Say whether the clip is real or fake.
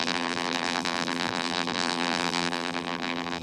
fake